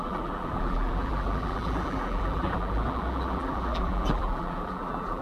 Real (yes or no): no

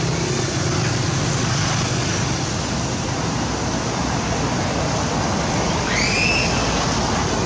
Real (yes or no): yes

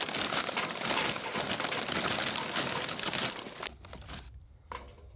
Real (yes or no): yes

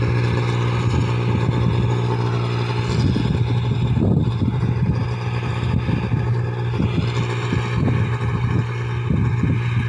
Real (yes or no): yes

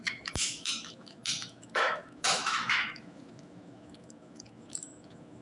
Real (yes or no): no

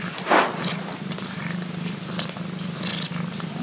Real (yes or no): yes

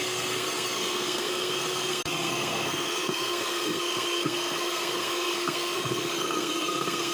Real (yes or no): no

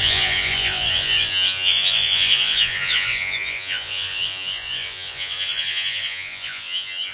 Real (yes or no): no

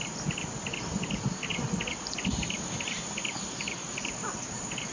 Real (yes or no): yes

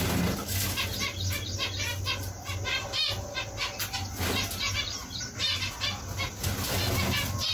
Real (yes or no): yes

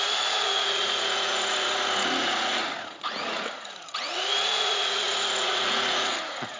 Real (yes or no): no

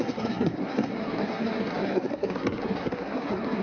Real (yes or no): no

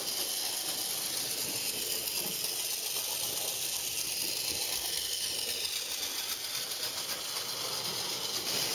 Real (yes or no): yes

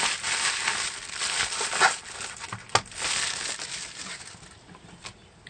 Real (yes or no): yes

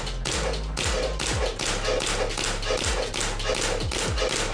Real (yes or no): yes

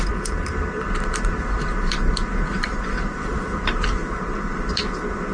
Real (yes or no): no